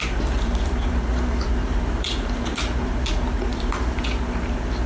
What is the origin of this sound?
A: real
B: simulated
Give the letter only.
B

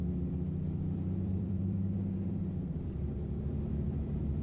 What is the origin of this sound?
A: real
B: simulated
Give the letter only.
B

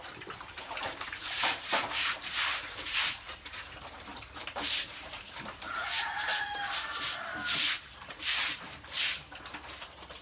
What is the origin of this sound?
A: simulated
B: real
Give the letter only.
A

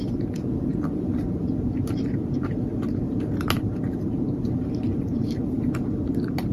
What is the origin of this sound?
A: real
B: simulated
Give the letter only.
B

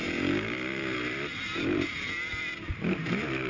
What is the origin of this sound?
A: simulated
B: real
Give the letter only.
A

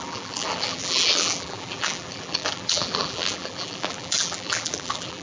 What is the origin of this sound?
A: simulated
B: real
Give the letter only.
A